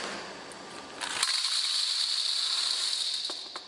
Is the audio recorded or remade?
recorded